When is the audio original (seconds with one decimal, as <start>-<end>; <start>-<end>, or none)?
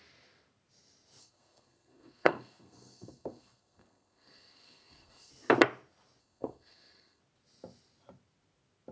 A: 0.0-1.2; 5.3-6.2; 7.2-8.9